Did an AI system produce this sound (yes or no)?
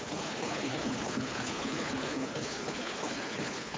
yes